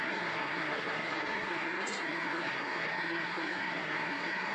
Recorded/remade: remade